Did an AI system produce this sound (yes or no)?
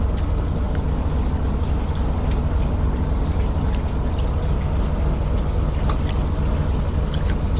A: no